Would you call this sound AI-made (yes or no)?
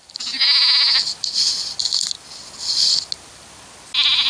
no